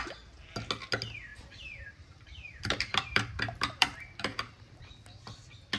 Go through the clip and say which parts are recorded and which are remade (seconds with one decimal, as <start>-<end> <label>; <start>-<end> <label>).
0.0-1.3 recorded; 1.3-4.8 remade; 4.8-5.8 recorded